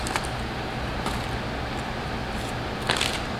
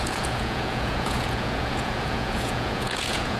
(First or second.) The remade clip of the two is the second